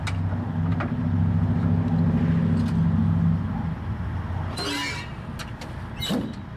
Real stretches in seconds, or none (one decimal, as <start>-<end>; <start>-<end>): 0.0-6.6